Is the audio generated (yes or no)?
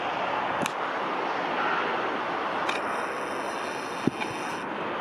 no